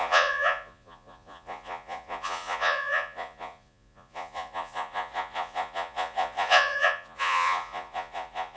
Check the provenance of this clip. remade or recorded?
remade